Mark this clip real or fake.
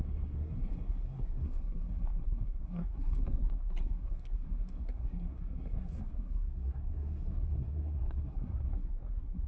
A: fake